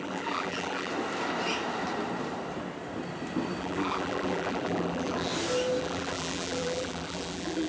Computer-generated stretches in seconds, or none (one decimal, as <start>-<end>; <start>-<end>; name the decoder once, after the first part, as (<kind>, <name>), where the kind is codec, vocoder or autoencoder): 0.0-0.9 (vocoder, BigVGAN v2); 3.6-5.3; 5.8-7.7

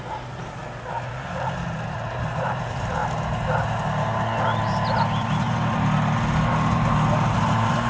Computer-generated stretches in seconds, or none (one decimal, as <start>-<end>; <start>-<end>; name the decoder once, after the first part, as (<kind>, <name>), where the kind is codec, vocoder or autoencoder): 0.0-0.6 (vocoder, BigVGAN v2); 1.1-3.0; 7.3-7.9

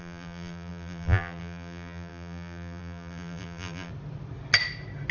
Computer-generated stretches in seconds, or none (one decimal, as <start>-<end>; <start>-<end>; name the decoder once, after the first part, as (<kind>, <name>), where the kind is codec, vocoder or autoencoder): 0.0-3.9 (vocoder, BigVGAN v2)

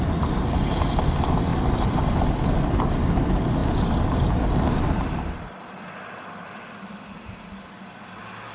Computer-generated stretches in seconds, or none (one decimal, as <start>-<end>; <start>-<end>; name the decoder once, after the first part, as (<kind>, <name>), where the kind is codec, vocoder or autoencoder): none

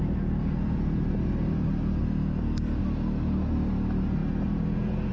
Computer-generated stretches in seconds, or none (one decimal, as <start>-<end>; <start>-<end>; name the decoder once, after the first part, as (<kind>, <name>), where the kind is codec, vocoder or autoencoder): 0.4-1.1 (vocoder, BigVGAN v2); 2.0-2.8

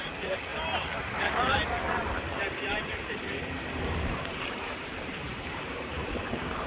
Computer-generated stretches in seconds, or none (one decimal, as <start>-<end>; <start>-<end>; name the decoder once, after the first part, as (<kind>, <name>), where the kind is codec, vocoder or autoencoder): 0.0-6.7 (vocoder, BigVGAN v2)